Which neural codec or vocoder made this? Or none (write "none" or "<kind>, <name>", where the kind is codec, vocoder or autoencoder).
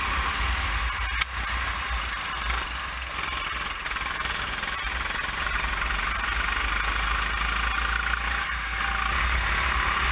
none